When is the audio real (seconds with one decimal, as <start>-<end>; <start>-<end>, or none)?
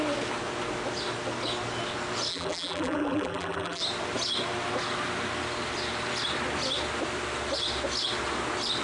0.0-2.3; 3.8-8.8